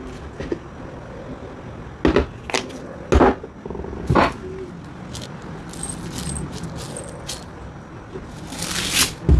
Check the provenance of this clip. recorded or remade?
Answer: recorded